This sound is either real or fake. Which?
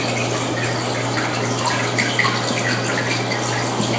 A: real